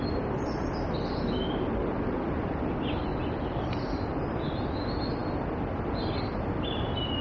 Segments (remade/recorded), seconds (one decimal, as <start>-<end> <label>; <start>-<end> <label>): 0.0-7.2 recorded